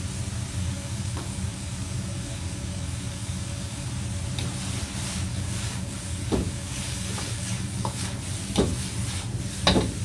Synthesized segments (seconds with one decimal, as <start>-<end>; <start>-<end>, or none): 0.6-3.9; 5.3-8.2